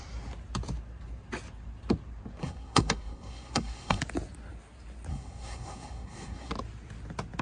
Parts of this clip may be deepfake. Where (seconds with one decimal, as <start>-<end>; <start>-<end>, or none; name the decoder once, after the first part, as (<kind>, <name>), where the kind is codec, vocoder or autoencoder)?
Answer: 2.4-4.0 (codec, SNAC); 5.1-6.5